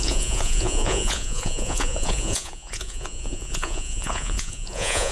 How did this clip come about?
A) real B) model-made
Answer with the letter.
B